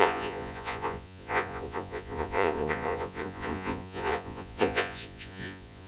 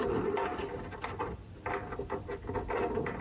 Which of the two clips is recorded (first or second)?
second